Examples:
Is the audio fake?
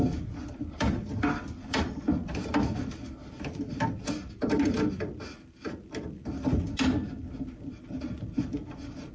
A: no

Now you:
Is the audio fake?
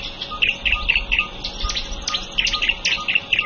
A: no